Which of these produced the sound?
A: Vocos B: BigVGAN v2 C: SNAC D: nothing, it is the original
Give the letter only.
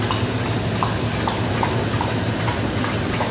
D